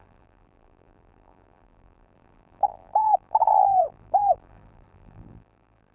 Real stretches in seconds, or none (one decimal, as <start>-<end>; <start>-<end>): none